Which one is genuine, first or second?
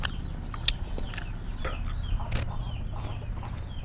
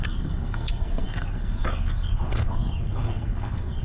first